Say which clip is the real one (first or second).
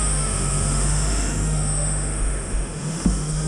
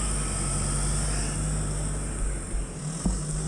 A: second